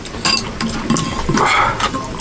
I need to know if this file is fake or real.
real